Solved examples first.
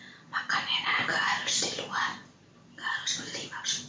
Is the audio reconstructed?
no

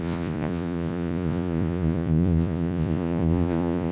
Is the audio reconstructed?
yes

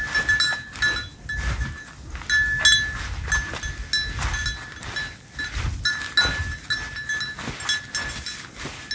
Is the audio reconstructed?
no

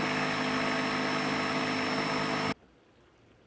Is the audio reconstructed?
no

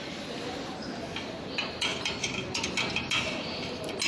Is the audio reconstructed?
no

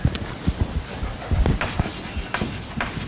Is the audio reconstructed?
no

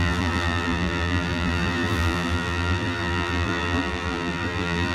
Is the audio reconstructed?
yes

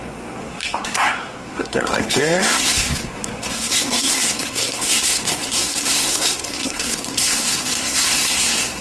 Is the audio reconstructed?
yes